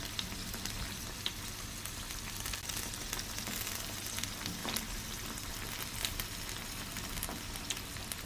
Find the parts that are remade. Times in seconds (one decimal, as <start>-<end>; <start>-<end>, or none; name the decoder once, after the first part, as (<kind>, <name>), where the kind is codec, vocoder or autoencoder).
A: none